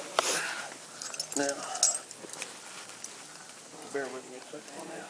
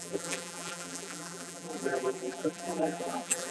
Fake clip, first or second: second